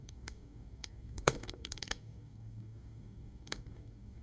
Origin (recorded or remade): remade